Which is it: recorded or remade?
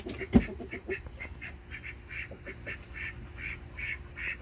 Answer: recorded